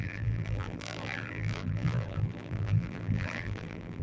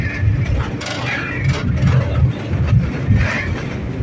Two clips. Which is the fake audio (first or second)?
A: first